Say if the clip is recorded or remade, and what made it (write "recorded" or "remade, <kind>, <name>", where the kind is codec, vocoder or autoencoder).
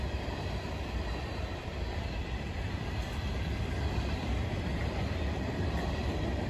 remade, vocoder, BigVGAN v2